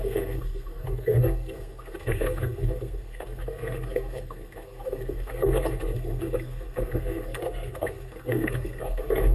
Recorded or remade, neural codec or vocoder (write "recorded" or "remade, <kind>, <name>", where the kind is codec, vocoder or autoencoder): remade, codec, SNAC